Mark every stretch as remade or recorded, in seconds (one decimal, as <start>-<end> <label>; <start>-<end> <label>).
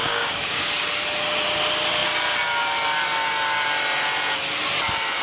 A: 0.0-0.8 remade; 0.8-5.2 recorded